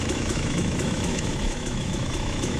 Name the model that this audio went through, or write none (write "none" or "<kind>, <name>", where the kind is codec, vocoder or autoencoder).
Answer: autoencoder, DAC-VAE